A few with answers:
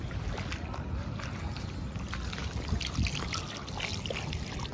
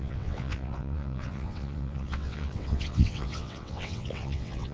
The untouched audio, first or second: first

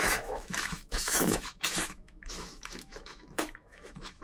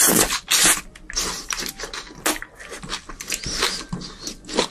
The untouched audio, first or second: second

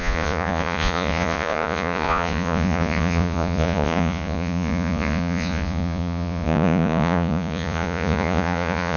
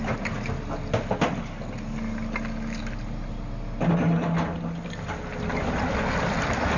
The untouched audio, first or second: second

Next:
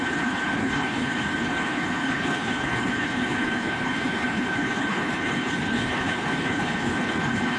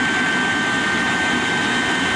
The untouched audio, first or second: second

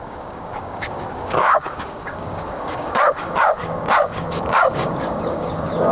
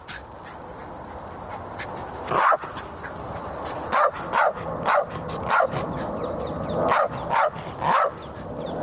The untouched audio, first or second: second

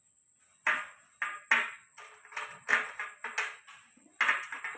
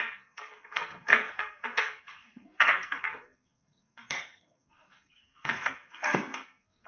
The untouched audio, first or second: first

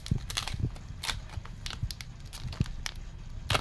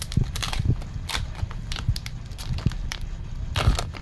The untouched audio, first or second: first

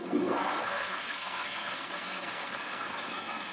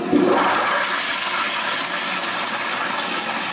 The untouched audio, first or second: second